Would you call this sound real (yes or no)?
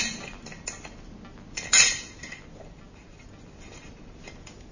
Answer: yes